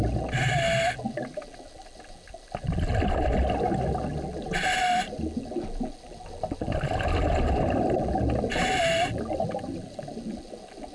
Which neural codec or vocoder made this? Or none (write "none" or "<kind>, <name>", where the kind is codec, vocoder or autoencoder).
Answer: none